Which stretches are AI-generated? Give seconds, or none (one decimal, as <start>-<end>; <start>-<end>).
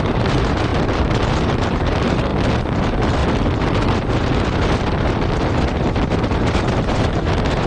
0.0-2.3; 2.8-3.2; 6.9-7.7